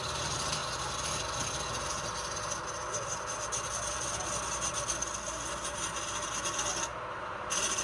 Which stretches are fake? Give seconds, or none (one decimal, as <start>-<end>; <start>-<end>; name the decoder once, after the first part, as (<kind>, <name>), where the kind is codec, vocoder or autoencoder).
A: none